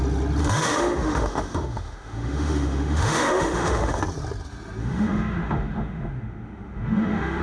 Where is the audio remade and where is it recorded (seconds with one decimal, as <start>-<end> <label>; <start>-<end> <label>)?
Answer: 0.0-0.4 recorded; 0.4-4.0 remade; 4.0-4.8 recorded; 4.8-7.4 remade